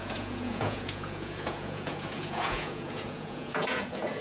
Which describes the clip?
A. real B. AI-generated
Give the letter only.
B